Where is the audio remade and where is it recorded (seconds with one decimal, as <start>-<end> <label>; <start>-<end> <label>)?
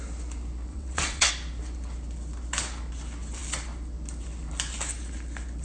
0.0-0.7 recorded; 0.7-1.3 remade; 1.3-5.6 recorded